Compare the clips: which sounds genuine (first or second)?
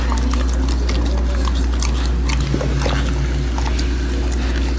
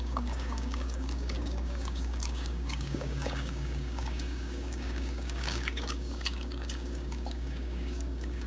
first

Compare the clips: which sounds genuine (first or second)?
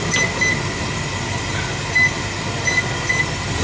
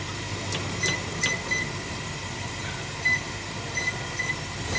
first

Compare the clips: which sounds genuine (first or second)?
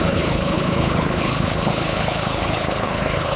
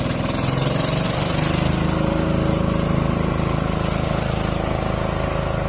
second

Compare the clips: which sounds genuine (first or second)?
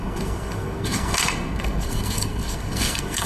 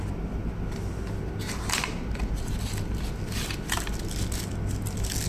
second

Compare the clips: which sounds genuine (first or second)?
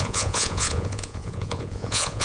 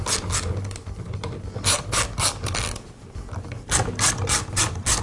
second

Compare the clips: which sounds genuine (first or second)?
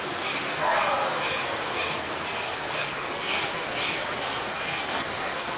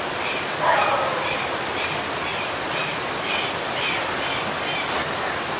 second